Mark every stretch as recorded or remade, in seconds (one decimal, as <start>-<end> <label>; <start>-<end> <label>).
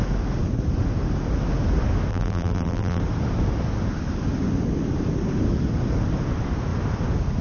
0.0-2.1 recorded; 2.1-3.0 remade; 3.0-7.4 recorded